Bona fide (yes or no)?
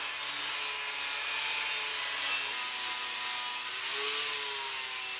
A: yes